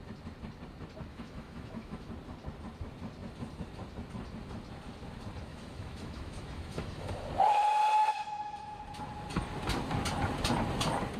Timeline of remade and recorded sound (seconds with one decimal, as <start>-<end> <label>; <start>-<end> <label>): 0.0-1.1 recorded; 1.1-2.1 remade; 2.1-5.5 recorded; 5.5-7.1 remade; 7.1-8.0 recorded; 8.0-8.8 remade; 8.8-11.2 recorded